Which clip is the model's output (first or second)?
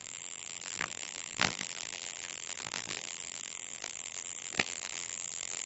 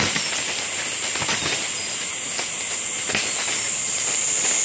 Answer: first